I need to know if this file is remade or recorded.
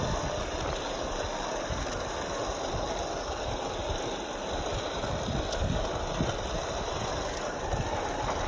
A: recorded